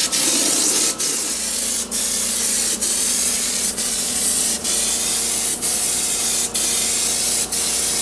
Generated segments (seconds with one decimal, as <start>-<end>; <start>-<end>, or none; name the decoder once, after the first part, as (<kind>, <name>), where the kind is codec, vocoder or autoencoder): 3.0-4.7 (vocoder, Vocos); 5.5-6.2